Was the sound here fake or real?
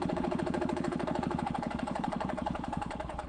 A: fake